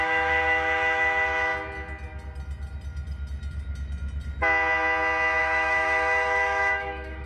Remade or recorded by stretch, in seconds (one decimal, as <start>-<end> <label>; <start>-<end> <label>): 0.0-1.5 remade; 1.5-5.4 recorded; 5.4-7.3 remade